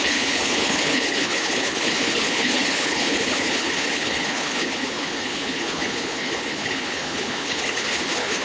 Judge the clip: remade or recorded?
remade